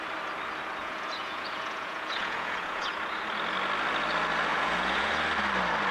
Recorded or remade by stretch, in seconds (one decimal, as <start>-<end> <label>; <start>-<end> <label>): 0.0-0.8 recorded; 0.8-2.9 remade; 2.9-4.5 recorded; 4.5-5.1 remade; 5.1-5.9 recorded